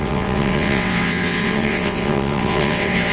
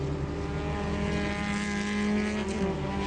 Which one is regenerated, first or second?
first